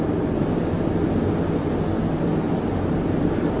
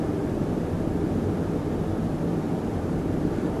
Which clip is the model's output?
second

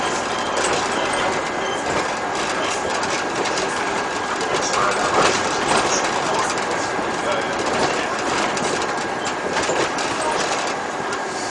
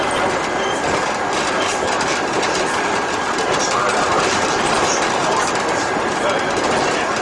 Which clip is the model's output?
second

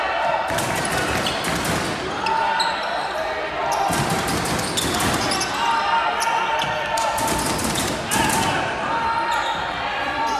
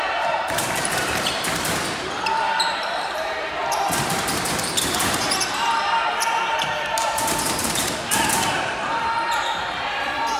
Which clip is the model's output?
second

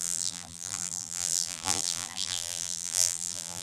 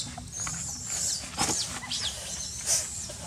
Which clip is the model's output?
first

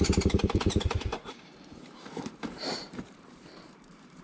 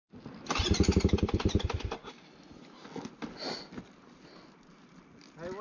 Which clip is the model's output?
first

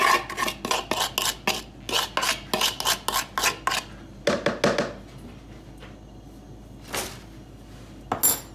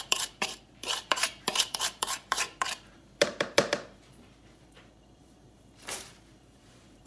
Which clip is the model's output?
second